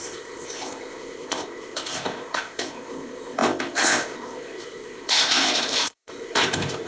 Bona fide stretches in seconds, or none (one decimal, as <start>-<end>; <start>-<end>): none